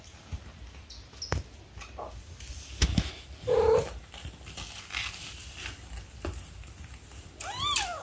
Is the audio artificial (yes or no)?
no